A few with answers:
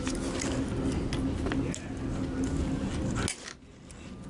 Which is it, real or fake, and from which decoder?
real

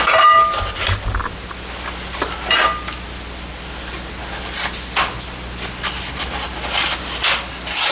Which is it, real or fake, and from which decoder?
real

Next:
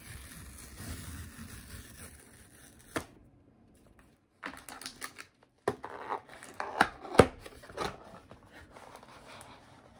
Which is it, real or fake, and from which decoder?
real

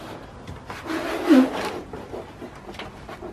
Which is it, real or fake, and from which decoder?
real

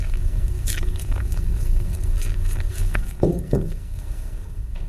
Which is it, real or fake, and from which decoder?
fake, codec, SNAC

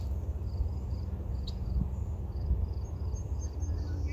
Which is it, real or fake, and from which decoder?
real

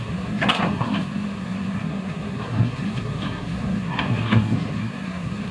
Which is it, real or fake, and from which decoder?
fake, codec, SNAC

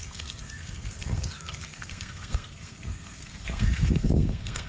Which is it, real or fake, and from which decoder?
fake, codec, SNAC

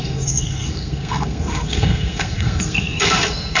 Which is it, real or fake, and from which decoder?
fake, codec, SNAC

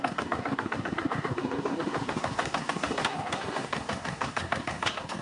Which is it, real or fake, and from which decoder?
fake, codec, SNAC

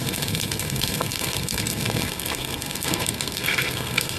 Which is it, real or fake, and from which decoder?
fake, codec, SNAC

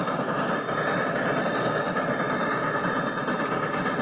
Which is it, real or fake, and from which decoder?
real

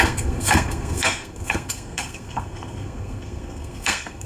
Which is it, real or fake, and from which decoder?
fake, codec, SNAC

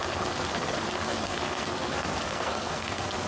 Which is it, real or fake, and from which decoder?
fake, codec, SNAC